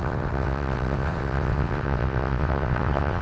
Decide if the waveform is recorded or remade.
remade